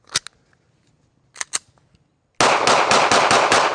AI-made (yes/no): no